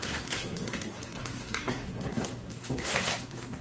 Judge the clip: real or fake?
fake